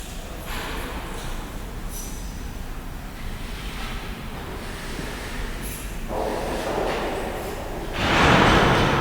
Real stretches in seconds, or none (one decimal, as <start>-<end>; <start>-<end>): 0.0-6.3; 7.6-8.0; 8.6-9.0